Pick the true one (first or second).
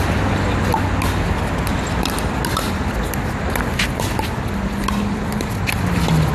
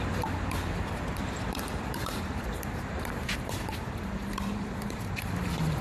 first